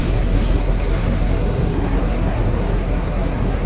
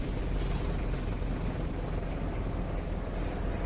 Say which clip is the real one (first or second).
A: second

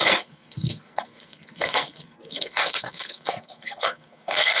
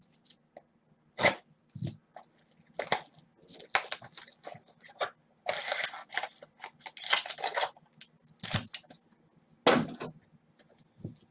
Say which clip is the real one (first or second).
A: second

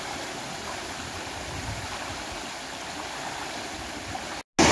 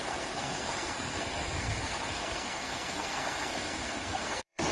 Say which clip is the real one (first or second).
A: first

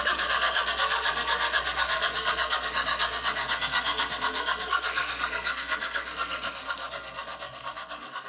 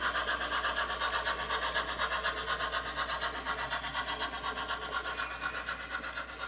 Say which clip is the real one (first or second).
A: second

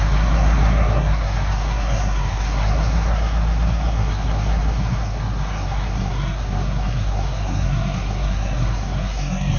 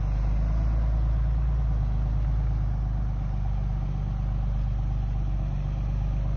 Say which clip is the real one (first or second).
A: second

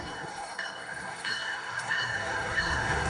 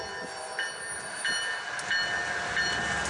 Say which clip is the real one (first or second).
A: second